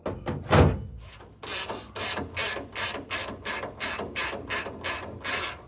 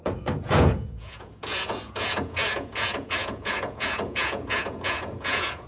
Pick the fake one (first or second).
second